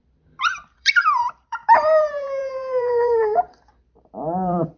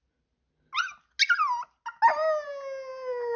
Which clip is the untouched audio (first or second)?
second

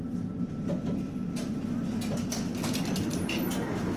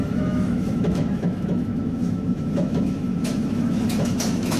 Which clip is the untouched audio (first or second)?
first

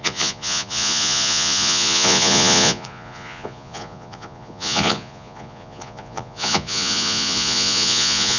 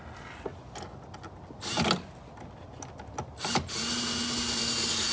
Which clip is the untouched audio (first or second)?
second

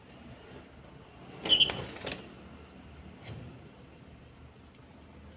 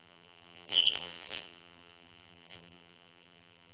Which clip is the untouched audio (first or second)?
first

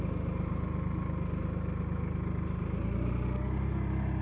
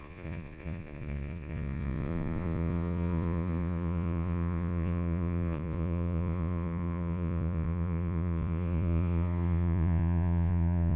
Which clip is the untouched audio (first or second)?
first